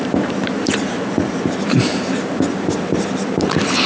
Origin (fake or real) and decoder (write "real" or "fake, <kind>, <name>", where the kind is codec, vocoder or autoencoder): fake, vocoder, BigVGAN v2